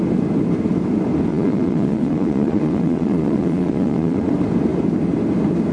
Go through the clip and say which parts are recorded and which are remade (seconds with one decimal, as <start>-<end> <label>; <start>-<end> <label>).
0.0-1.3 recorded; 1.3-4.3 remade; 4.3-5.7 recorded